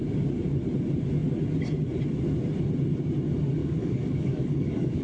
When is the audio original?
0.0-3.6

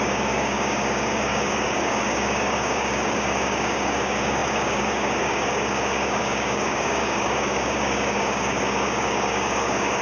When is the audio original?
none

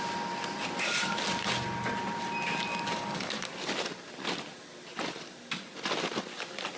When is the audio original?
0.0-2.7; 3.4-6.8